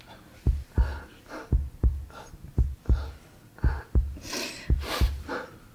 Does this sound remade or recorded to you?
recorded